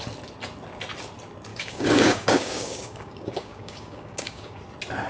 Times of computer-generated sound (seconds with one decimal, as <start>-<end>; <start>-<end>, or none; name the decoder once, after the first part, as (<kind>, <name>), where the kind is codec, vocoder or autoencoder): 1.5-4.6 (codec, DAC)